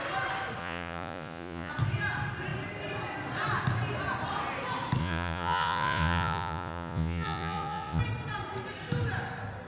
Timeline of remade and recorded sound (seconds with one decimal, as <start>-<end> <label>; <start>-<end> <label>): 0.0-0.6 recorded; 0.6-1.7 remade; 1.7-5.0 recorded; 5.0-8.0 remade; 8.0-9.7 recorded